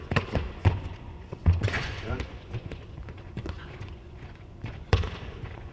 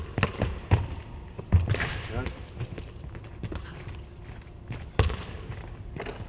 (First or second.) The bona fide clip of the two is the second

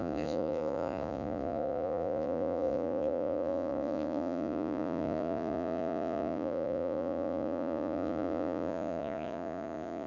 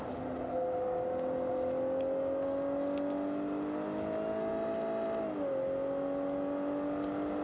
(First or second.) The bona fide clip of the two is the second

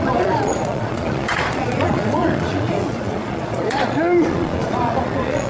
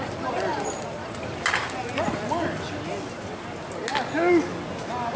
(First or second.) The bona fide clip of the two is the second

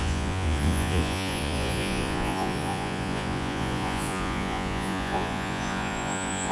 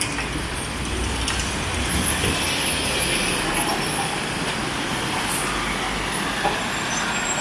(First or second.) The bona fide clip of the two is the second